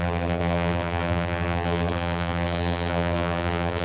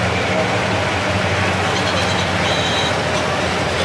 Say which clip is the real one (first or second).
second